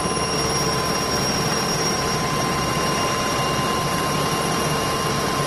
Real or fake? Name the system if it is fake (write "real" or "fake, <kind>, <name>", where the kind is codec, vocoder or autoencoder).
fake, vocoder, BigVGAN v2